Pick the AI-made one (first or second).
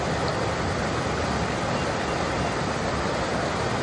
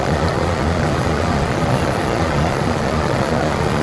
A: second